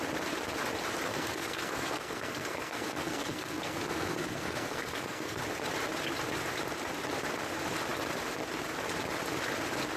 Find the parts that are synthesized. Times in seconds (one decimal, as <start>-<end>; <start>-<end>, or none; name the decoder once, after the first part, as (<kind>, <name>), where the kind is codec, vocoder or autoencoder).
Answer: 1.1-5.4 (codec, SNAC)